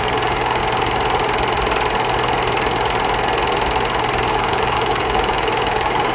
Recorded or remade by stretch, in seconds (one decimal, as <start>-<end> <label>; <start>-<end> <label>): 0.0-0.6 remade; 0.6-4.3 recorded; 4.3-6.1 remade